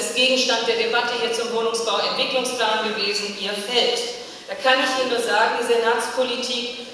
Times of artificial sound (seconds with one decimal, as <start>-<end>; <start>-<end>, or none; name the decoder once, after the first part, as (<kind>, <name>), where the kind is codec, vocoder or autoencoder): 2.7-5.5 (autoencoder, DAC-VAE)